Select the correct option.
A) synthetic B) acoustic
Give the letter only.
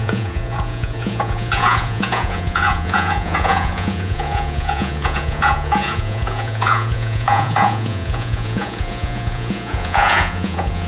A